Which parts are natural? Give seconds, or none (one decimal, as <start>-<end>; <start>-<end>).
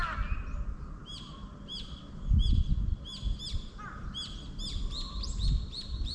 0.0-1.1; 2.0-6.1